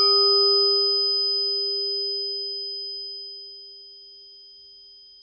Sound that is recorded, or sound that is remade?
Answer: recorded